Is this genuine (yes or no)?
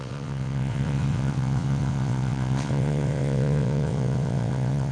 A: no